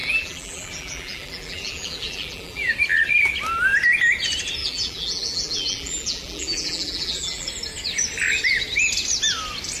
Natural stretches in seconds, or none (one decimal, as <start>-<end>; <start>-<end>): 2.7-4.6; 7.5-9.8